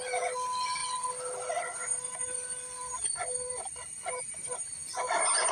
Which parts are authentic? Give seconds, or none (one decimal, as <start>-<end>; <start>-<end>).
0.0-0.8; 4.1-5.5